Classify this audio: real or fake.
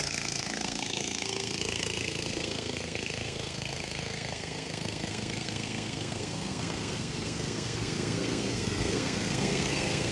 fake